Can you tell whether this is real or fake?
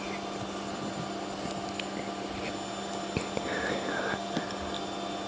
real